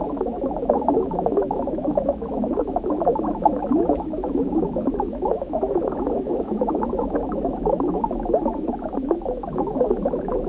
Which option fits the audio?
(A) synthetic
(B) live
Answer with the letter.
A